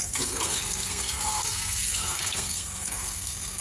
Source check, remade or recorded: remade